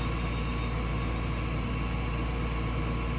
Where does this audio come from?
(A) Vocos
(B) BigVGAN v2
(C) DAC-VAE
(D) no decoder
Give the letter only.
D